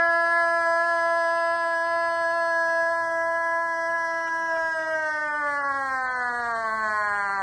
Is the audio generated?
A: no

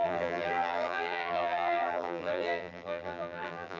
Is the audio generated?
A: yes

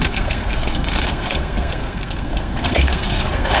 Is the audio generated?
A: yes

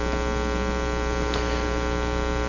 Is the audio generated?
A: no